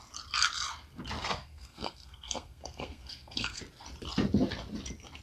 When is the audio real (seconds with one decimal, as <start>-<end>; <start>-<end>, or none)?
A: 0.0-1.2; 3.6-5.2